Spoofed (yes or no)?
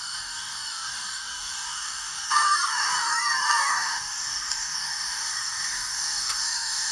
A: yes